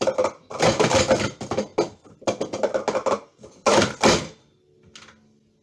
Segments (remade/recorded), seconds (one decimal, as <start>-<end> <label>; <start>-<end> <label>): 0.0-5.6 recorded